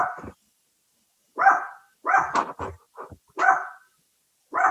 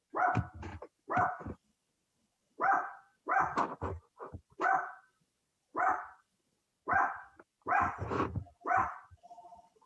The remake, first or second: second